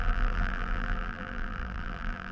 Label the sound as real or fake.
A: fake